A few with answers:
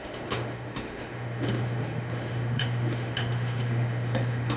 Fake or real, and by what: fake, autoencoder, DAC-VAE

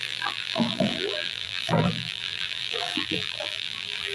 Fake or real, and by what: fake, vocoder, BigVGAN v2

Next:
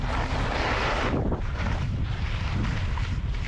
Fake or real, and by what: real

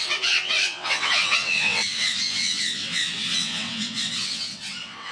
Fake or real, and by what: fake, vocoder, WaveNeXt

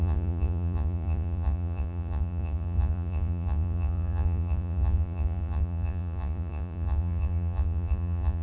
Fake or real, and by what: fake, vocoder, Vocos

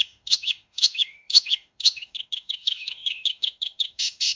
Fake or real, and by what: fake, autoencoder, DAC-VAE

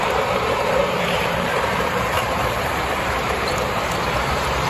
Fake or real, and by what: fake, vocoder, BigVGAN v2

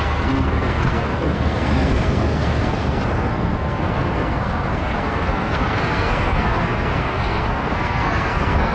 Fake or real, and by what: fake, codec, SNAC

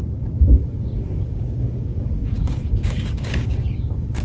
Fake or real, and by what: fake, codec, DAC